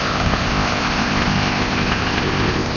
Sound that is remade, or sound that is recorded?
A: remade